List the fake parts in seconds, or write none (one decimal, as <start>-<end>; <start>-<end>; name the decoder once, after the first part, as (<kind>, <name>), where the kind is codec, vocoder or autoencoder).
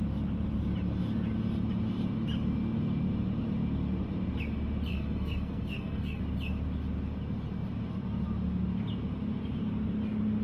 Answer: 4.9-6.2 (codec, SNAC)